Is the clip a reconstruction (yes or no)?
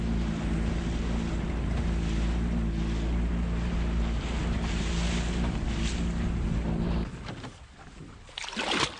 no